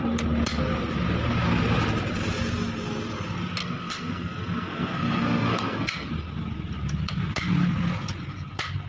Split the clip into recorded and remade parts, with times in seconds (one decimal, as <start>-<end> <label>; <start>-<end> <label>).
0.0-3.6 recorded; 3.6-6.1 remade; 6.1-8.9 recorded